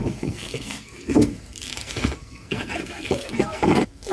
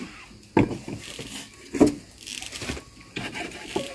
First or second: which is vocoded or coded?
first